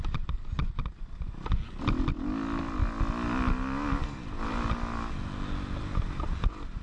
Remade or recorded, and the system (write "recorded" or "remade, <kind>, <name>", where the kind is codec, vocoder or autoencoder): recorded